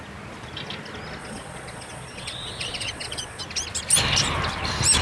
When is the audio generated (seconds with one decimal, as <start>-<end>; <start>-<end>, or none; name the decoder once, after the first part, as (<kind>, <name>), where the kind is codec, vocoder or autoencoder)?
1.2-3.4 (vocoder, Vocos)